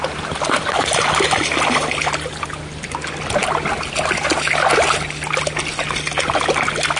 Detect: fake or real real